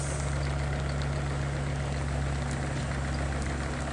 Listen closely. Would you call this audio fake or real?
real